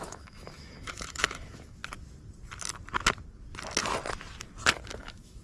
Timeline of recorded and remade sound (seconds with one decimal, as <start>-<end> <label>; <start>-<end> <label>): 0.0-1.8 remade; 1.8-5.0 recorded; 5.0-5.4 remade